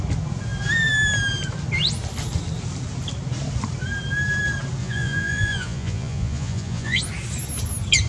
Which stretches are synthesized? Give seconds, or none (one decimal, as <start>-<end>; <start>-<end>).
4.8-7.0